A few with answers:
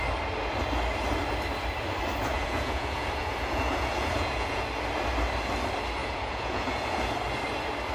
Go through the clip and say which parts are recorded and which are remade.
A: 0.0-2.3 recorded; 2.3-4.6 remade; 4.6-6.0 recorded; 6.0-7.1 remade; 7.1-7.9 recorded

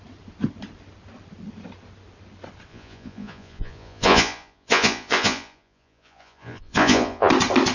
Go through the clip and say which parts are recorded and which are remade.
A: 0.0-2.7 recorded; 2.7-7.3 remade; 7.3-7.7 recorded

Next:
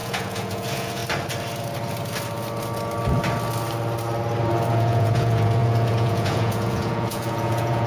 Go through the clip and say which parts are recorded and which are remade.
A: 0.0-1.0 remade; 1.0-4.7 recorded; 4.7-7.9 remade

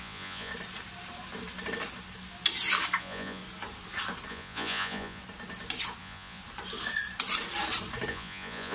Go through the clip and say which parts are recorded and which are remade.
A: 0.0-0.5 remade; 0.5-3.0 recorded; 3.0-3.4 remade; 3.4-4.3 recorded; 4.3-5.2 remade; 5.2-6.0 recorded; 6.0-6.4 remade; 6.4-8.1 recorded; 8.1-8.7 remade

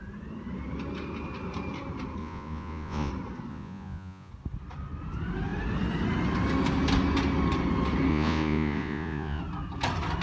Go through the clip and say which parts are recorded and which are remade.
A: 0.0-2.2 recorded; 2.2-3.1 remade; 3.1-3.5 recorded; 3.5-4.3 remade; 4.3-8.1 recorded; 8.1-9.4 remade; 9.4-10.2 recorded